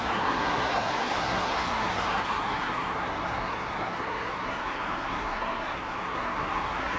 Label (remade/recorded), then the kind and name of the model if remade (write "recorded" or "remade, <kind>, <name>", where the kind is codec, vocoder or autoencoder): remade, codec, SNAC